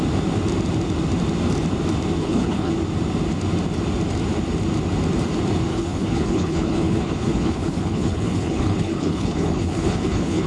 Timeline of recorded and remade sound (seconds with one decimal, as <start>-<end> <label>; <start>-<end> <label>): 0.0-2.2 recorded; 2.2-2.7 remade; 2.7-5.7 recorded; 5.7-10.5 remade